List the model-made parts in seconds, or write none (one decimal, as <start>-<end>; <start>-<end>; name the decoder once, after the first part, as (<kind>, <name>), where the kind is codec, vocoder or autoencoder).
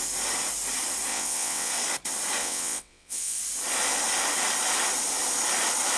1.1-1.7 (vocoder, WaveNeXt); 2.4-3.4